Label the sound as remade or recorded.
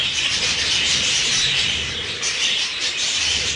remade